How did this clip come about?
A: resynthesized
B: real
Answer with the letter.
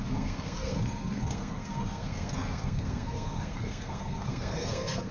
A